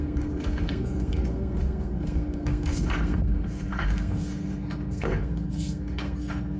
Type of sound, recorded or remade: remade